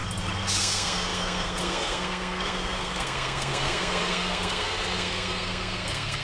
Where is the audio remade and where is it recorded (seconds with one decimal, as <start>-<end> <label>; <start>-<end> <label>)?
0.0-0.6 recorded; 0.6-6.2 remade